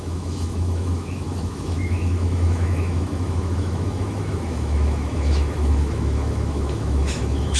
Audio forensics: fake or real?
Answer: fake